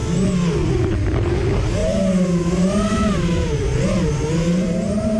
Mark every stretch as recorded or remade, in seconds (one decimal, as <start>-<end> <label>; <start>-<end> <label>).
0.0-1.8 recorded; 1.8-5.2 remade